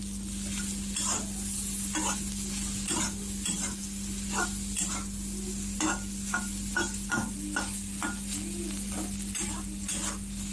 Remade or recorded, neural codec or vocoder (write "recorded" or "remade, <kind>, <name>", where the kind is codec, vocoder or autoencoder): recorded